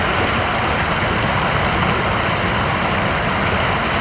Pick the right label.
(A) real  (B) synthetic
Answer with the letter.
A